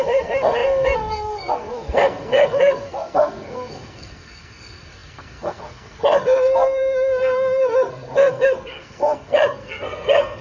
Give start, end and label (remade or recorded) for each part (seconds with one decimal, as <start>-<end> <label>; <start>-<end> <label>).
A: 0.0-10.4 remade